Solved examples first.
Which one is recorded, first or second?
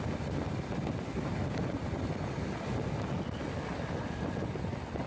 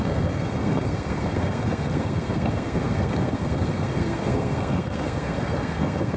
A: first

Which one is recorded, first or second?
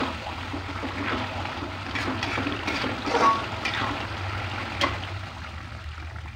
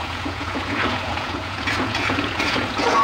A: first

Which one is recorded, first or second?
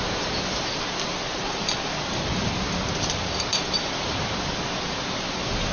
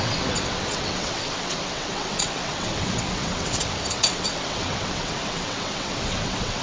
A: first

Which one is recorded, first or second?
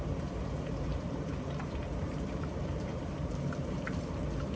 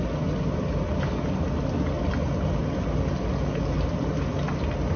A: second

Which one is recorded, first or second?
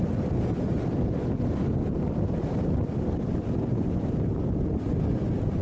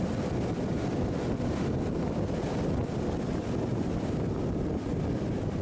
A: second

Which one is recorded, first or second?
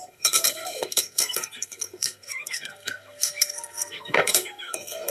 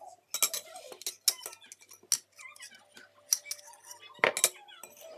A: second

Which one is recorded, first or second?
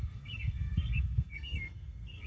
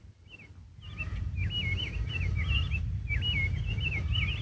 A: second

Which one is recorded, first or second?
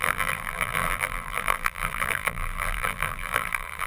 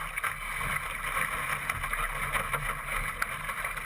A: second